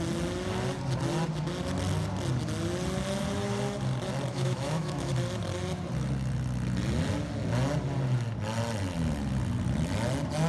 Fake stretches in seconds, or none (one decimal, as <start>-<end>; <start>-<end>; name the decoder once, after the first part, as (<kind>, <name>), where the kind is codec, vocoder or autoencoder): 4.3-5.1 (autoencoder, DAC-VAE)